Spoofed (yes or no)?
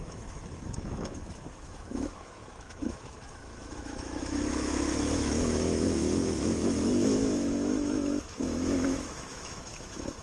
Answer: yes